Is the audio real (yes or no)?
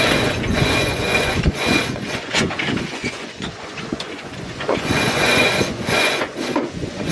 no